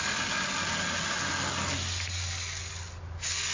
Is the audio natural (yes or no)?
yes